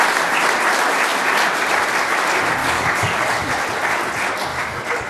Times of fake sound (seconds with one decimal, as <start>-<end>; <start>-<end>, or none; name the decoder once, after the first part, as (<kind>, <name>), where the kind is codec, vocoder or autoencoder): 2.6-3.5 (codec, DAC); 4.5-5.1